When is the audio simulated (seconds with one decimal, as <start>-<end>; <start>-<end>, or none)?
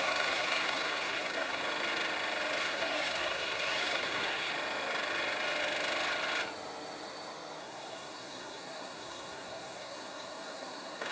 0.0-1.6; 2.6-4.5; 7.6-11.1